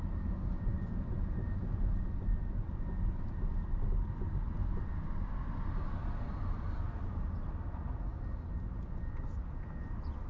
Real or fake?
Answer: real